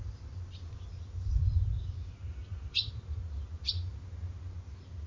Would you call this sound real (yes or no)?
yes